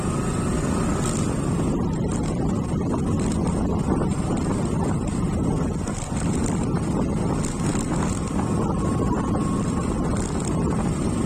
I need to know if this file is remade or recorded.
recorded